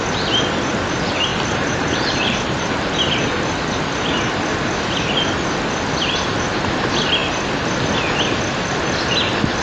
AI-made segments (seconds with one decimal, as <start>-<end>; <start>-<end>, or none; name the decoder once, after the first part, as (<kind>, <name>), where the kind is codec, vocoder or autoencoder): 1.3-2.7 (vocoder, BigVGAN v2)

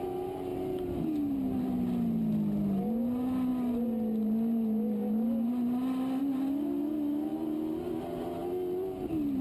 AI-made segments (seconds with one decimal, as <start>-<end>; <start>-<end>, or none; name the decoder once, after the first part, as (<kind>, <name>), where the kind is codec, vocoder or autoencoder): none

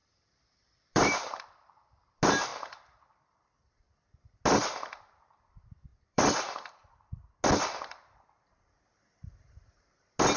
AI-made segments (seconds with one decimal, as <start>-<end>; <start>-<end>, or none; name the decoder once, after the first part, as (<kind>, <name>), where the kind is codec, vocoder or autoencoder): 0.0-1.4 (vocoder, BigVGAN v2); 2.5-3.9; 5.9-6.7

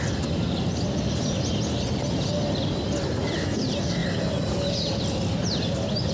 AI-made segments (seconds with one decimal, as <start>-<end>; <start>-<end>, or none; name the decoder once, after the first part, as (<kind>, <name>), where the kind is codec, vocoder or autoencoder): none